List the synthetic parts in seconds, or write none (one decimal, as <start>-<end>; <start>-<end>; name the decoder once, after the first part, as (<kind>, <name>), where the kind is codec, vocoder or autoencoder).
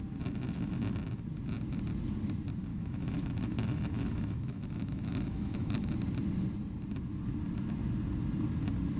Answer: 2.7-5.9 (autoencoder, DAC-VAE)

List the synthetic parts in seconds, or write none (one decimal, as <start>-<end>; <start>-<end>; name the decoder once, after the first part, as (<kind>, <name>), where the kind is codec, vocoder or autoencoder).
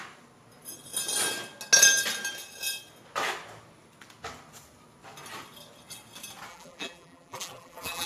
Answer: 6.5-8.1 (vocoder, BigVGAN v2)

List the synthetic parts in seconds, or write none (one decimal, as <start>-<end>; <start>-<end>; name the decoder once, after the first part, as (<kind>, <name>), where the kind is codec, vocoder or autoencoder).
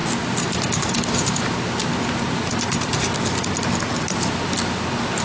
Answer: none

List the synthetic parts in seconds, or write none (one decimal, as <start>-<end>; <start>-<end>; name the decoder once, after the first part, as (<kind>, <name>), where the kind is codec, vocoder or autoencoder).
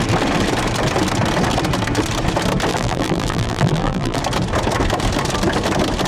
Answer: 2.7-4.2 (vocoder, BigVGAN v2)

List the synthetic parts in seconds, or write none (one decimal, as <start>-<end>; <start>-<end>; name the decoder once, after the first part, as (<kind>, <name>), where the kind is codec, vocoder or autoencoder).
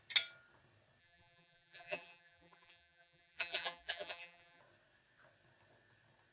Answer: 1.0-4.6 (vocoder, BigVGAN v2)